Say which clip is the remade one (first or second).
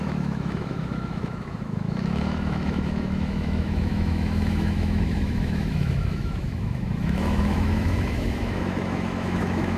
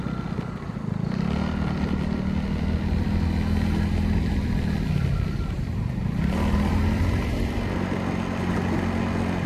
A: first